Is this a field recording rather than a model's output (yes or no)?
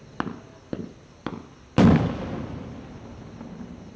yes